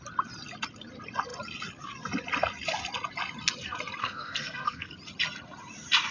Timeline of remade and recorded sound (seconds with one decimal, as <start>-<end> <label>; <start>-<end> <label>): 0.0-4.0 recorded; 4.0-4.9 remade; 4.9-6.1 recorded